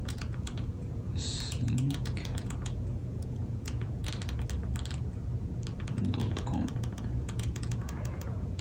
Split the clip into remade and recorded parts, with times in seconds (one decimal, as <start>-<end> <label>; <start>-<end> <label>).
0.0-4.1 remade; 4.1-5.8 recorded; 5.8-8.6 remade

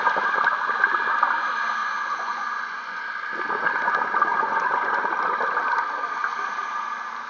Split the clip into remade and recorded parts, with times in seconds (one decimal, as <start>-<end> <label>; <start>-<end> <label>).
0.0-1.8 recorded; 1.8-3.0 remade; 3.0-4.3 recorded; 4.3-5.1 remade; 5.1-7.3 recorded

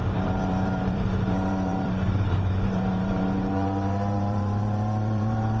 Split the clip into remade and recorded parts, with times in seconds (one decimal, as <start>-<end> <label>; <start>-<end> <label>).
0.0-5.6 remade

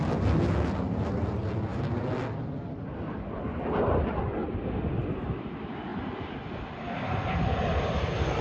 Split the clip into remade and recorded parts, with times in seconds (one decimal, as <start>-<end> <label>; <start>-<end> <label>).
0.0-8.4 recorded

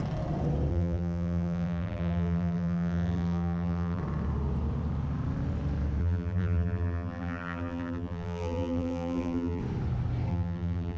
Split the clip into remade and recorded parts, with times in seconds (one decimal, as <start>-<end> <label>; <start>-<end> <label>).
0.0-0.7 recorded; 0.7-4.0 remade; 4.0-6.0 recorded; 6.0-9.6 remade; 9.6-10.3 recorded; 10.3-11.0 remade

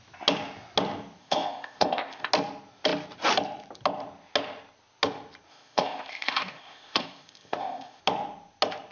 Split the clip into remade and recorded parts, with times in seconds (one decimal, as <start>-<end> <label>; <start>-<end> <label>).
0.0-1.2 recorded; 1.2-2.3 remade; 2.3-5.5 recorded; 5.5-8.0 remade; 8.0-8.9 recorded